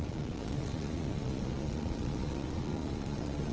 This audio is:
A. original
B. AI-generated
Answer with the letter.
B